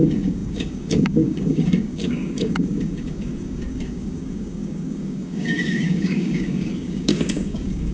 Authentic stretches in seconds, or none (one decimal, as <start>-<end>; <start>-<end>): none